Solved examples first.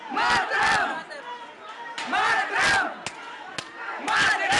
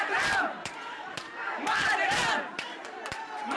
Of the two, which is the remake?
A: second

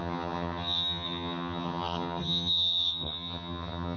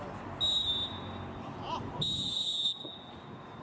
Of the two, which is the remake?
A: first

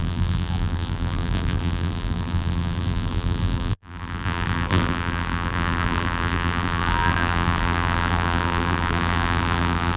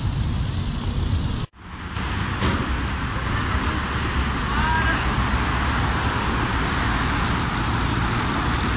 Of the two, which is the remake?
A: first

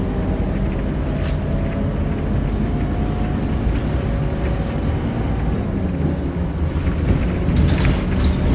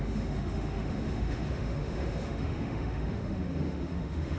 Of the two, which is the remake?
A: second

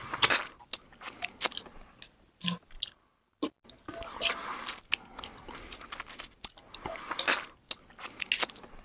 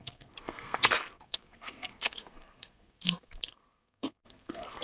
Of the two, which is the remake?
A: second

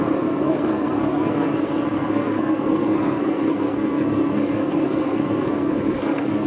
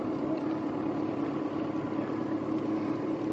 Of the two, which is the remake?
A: first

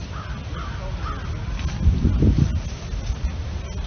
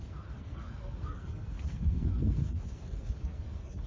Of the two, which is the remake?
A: second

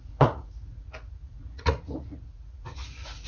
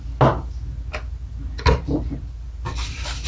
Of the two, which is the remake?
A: first